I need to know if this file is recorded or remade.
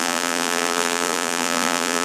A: remade